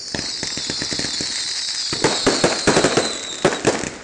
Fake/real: real